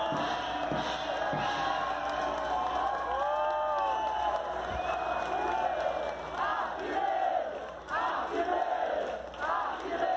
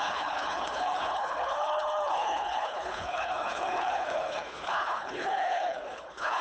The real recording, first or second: first